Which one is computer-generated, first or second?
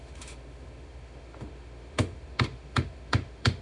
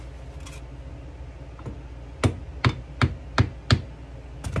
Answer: first